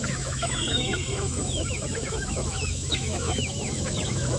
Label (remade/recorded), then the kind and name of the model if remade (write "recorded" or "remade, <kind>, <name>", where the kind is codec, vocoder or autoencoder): remade, autoencoder, DAC-VAE